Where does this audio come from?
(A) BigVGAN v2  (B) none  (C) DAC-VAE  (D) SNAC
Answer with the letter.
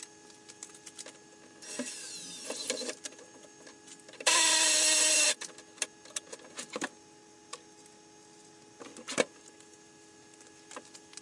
B